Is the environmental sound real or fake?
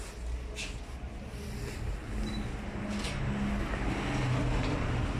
real